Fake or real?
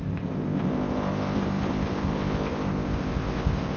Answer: fake